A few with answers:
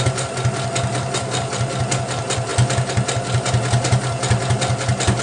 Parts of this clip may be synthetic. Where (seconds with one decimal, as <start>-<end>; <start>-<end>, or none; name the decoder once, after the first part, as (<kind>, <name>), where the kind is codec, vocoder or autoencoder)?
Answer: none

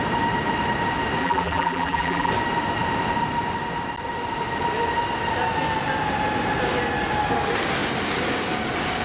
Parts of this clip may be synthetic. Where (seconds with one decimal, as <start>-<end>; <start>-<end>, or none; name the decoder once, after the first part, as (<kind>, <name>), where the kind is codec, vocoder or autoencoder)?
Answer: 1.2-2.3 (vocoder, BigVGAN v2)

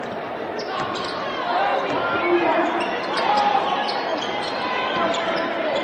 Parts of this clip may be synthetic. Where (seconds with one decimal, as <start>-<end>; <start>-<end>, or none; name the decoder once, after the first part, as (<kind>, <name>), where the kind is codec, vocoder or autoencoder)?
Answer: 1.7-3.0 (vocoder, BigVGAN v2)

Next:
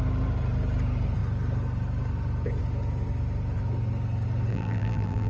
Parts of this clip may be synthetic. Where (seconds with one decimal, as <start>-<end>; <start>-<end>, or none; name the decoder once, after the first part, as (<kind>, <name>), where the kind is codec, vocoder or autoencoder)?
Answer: 4.5-5.3 (vocoder, BigVGAN v2)